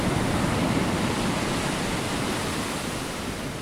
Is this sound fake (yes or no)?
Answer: no